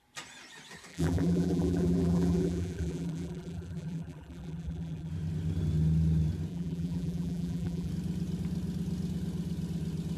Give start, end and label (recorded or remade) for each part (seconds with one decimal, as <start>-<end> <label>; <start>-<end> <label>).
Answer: 0.0-0.9 recorded; 0.9-5.1 remade; 5.1-6.5 recorded; 6.5-7.9 remade; 7.9-10.2 recorded